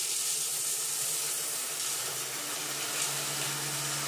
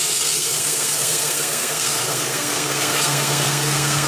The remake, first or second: second